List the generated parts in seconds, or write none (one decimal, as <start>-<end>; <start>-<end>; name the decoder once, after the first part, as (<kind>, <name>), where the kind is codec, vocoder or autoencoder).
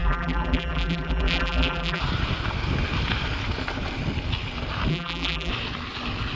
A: 0.0-2.0 (vocoder, BigVGAN v2); 4.9-5.5